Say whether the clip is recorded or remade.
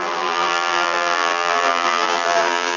remade